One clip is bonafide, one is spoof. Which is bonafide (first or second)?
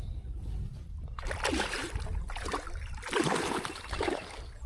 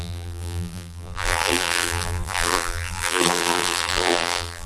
first